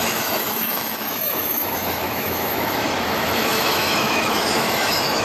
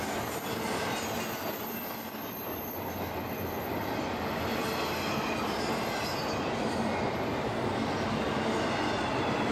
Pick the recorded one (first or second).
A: second